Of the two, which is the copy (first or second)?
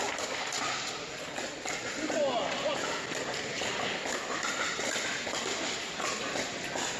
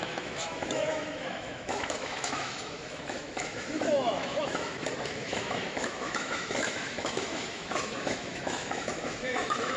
second